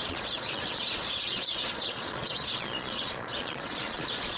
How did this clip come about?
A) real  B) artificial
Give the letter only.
B